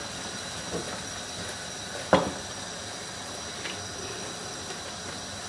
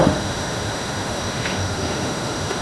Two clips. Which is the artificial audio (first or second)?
second